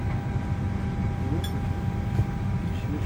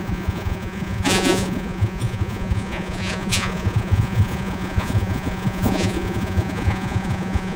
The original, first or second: first